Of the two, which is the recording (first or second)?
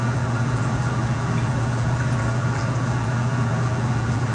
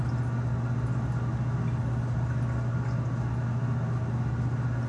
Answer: second